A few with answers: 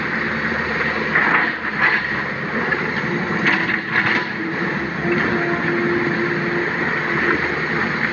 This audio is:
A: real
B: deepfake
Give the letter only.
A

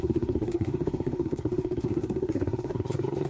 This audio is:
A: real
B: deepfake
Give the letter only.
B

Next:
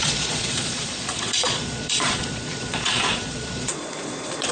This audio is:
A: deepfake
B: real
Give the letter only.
A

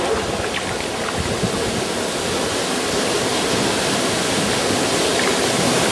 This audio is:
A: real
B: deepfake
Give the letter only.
A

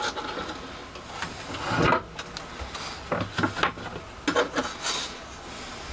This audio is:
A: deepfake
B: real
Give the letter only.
B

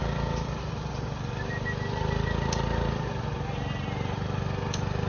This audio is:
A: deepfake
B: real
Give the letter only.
B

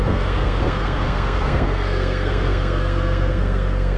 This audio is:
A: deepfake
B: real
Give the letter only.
A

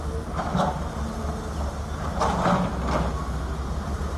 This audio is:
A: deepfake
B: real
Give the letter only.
B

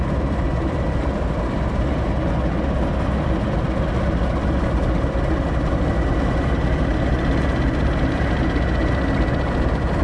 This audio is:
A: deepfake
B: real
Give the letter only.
B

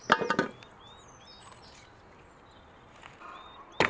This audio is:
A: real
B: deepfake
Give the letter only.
A